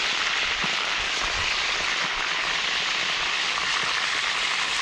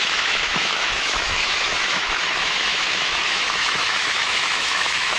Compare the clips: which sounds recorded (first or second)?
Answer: first